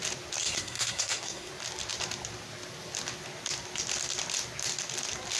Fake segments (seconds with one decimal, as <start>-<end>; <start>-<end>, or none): 0.4-1.5